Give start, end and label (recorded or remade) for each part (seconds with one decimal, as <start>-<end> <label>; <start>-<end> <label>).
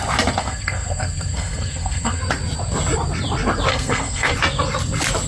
0.0-0.4 recorded; 0.4-2.2 remade; 2.2-3.7 recorded; 3.7-4.3 remade; 4.3-5.3 recorded